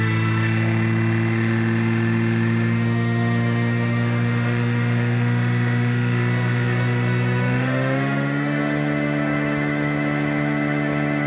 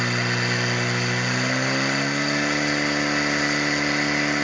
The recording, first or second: second